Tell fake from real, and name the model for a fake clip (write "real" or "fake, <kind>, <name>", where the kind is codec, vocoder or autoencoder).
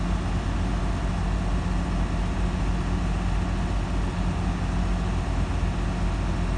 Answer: real